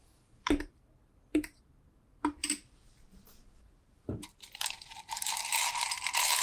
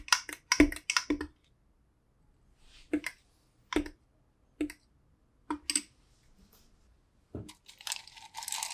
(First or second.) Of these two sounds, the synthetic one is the first